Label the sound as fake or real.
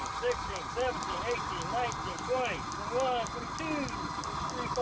real